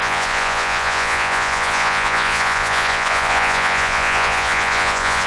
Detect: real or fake fake